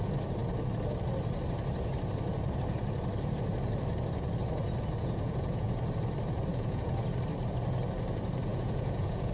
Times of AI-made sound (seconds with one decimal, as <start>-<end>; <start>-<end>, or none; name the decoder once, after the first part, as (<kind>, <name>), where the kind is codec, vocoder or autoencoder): 5.0-5.8 (vocoder, Vocos); 6.5-7.0; 8.5-9.3